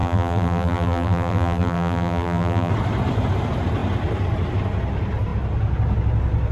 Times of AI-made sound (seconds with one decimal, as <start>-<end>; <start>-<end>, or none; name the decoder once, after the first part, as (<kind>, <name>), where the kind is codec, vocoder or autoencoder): 0.0-2.7 (vocoder, BigVGAN v2)